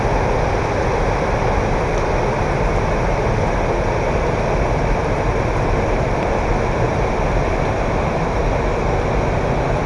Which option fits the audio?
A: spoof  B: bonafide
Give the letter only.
B